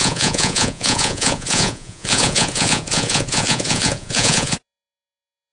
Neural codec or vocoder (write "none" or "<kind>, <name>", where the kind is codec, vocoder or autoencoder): vocoder, Vocos